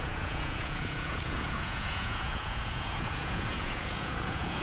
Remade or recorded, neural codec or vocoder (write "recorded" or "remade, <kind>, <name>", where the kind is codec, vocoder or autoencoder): remade, vocoder, Vocos